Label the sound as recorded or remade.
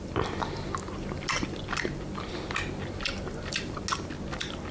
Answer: recorded